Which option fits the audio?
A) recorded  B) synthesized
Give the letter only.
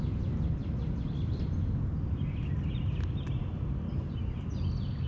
A